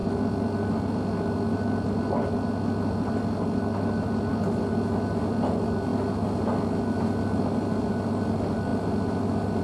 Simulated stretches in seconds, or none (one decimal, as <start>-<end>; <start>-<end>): none